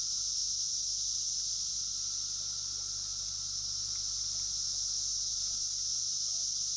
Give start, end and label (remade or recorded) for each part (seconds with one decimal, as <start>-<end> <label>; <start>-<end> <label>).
0.0-0.4 recorded; 0.4-1.7 remade; 1.7-6.8 recorded